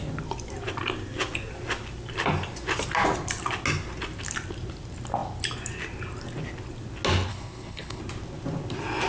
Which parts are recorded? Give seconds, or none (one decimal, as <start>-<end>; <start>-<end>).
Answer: 0.0-7.3; 8.0-9.1